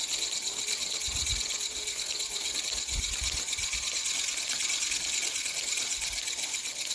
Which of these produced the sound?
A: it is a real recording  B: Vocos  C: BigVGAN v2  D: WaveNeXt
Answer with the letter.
A